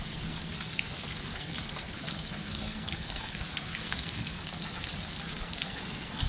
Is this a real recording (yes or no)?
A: no